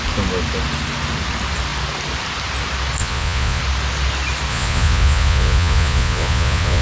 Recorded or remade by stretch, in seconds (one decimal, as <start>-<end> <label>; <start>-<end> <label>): 0.0-3.0 recorded; 3.0-3.6 remade; 3.6-4.5 recorded; 4.5-6.8 remade